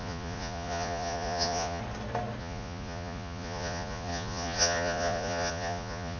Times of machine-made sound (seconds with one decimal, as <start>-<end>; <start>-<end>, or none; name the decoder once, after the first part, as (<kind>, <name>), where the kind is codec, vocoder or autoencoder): 0.0-1.8 (vocoder, Vocos); 2.4-6.2